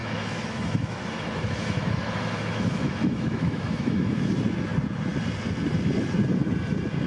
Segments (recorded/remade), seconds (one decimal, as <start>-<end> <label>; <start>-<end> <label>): 0.0-4.3 remade; 4.3-7.1 recorded